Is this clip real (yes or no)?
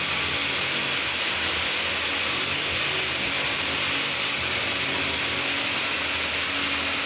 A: yes